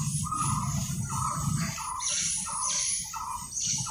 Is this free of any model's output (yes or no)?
no